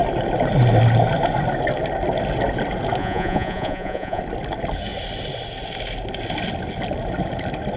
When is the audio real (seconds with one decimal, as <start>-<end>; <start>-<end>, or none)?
0.0-3.0; 4.2-7.8